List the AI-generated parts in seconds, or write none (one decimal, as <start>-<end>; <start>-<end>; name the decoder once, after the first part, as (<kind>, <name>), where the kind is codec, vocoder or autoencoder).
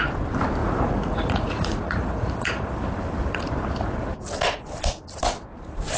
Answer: 0.6-2.7 (vocoder, Vocos)